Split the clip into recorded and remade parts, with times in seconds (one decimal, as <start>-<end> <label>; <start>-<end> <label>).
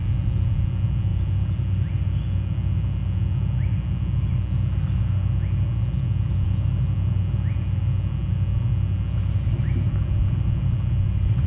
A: 0.0-11.5 recorded